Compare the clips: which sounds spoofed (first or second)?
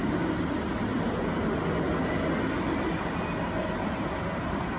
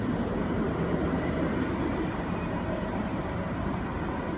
second